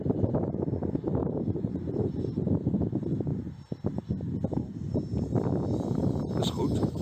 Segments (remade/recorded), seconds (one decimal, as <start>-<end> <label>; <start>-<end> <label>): 0.0-1.2 recorded; 1.2-2.4 remade; 2.4-7.0 recorded